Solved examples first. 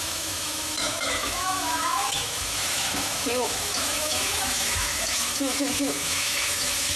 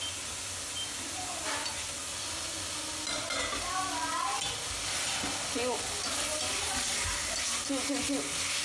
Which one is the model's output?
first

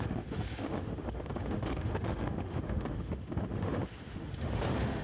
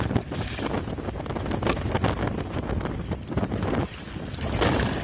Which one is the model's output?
first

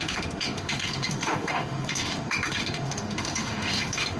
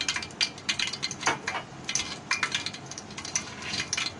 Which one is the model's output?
first